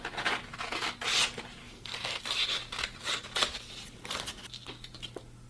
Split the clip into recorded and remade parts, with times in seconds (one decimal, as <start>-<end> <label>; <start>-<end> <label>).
0.0-1.6 recorded; 1.6-2.2 remade; 2.2-5.5 recorded